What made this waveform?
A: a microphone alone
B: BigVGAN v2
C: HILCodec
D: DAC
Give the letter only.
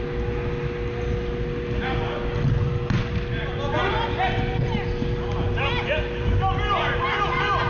A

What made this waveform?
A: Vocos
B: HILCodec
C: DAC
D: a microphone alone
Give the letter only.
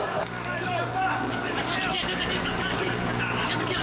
C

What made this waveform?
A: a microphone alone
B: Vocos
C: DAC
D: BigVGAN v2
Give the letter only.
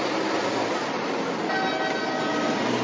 A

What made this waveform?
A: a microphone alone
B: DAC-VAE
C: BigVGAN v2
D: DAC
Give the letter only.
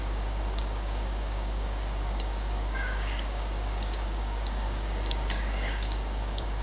D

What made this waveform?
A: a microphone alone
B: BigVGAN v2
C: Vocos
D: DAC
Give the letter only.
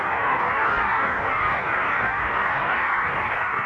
D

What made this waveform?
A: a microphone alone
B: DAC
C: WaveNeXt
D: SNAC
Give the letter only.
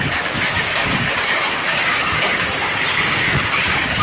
B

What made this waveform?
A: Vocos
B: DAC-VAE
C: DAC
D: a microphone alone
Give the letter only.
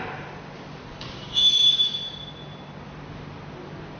D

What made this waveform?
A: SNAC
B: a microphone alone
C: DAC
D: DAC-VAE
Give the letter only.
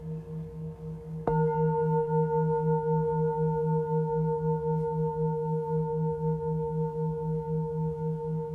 C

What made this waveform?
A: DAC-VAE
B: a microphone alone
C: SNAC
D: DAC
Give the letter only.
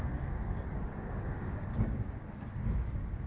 D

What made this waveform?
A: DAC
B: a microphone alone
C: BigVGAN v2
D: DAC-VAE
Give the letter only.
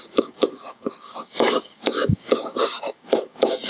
A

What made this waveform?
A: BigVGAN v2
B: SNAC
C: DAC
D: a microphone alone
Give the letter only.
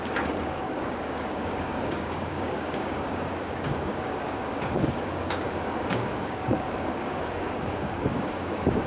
C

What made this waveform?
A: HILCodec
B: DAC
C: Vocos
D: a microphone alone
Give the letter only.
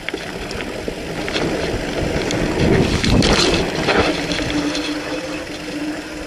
D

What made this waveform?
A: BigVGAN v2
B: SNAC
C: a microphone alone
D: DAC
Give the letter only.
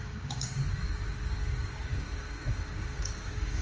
D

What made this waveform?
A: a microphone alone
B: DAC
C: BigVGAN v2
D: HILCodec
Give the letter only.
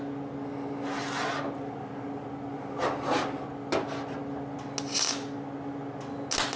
A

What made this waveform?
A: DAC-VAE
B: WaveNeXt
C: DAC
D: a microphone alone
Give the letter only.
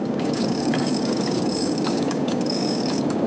C